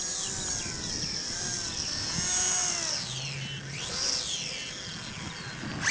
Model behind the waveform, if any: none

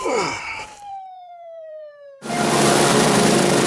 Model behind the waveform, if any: vocoder, BigVGAN v2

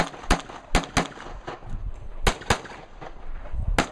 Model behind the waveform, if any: none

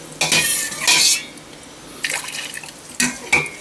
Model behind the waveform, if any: none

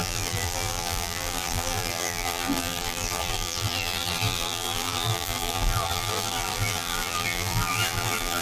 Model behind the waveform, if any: vocoder, BigVGAN v2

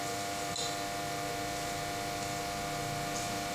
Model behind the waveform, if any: none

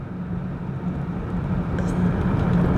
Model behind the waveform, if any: none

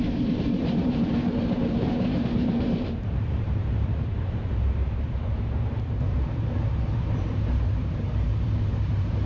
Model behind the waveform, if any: vocoder, BigVGAN v2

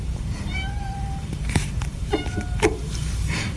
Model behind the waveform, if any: vocoder, BigVGAN v2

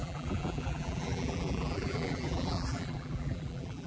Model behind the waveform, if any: vocoder, BigVGAN v2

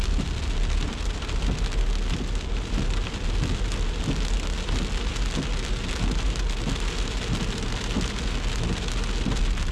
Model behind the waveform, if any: none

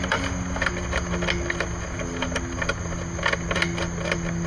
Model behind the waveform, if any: none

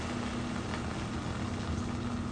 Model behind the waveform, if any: none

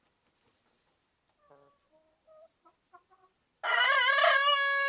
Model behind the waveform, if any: none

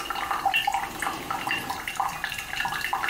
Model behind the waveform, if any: vocoder, BigVGAN v2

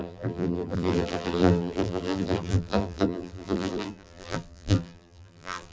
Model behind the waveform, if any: vocoder, BigVGAN v2